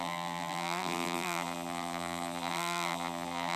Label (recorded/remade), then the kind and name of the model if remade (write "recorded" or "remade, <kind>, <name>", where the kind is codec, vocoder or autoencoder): remade, vocoder, BigVGAN v2